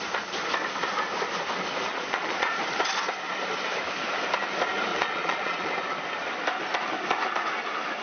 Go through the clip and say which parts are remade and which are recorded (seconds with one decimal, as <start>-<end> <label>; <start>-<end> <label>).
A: 0.0-1.9 recorded; 1.9-2.6 remade; 2.6-4.9 recorded; 4.9-5.7 remade; 5.7-8.0 recorded